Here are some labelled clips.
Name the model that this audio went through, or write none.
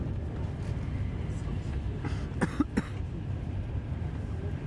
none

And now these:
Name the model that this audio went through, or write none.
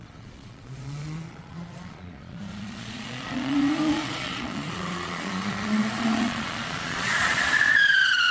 vocoder, Vocos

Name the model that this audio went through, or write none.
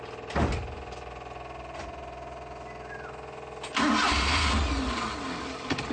none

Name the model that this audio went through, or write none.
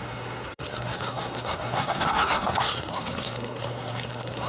codec, SNAC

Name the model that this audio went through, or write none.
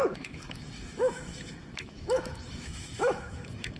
autoencoder, DAC-VAE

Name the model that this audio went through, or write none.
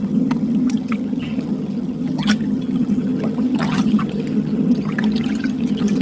vocoder, HiFi-GAN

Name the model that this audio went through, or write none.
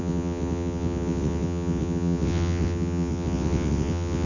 vocoder, WaveNeXt